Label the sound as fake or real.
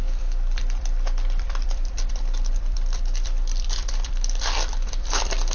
fake